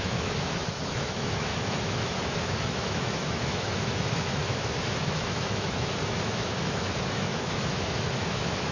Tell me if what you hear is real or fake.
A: fake